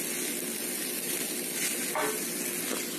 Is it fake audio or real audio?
real